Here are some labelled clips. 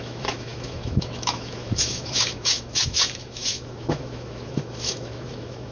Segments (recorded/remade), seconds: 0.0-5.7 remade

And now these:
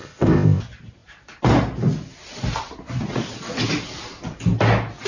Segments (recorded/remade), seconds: 0.0-0.6 remade; 0.6-5.1 recorded

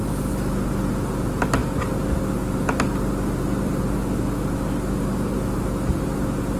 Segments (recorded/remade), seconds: 0.0-6.6 recorded